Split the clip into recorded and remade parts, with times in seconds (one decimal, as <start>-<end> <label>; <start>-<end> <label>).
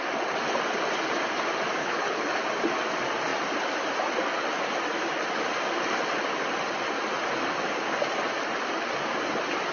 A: 0.0-1.8 recorded; 1.8-2.4 remade; 2.4-9.7 recorded